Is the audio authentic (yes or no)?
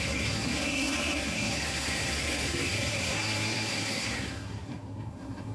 no